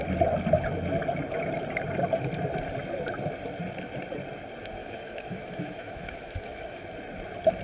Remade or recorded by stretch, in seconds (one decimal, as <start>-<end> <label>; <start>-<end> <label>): 0.0-4.8 recorded; 4.8-6.8 remade; 6.8-7.6 recorded